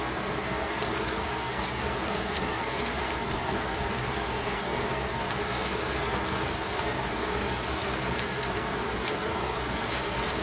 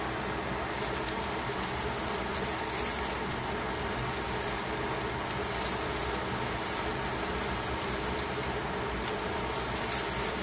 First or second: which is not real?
first